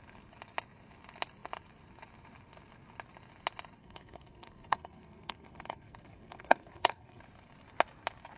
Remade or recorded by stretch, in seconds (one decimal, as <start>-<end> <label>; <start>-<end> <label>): 0.0-3.8 recorded; 3.8-7.2 remade; 7.2-8.4 recorded